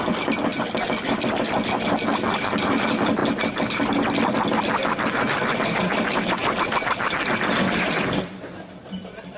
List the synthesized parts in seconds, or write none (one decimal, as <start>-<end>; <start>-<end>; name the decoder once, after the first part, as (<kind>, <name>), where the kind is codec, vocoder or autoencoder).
none